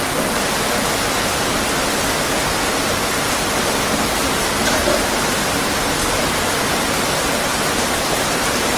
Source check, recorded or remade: recorded